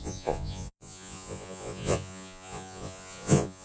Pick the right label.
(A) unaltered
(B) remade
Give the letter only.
B